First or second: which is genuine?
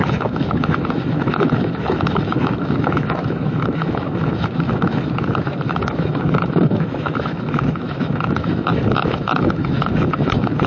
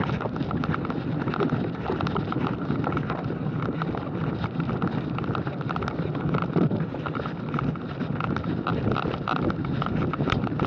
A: second